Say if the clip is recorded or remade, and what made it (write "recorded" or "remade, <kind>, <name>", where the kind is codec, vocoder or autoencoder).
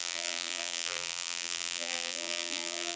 remade, vocoder, BigVGAN v2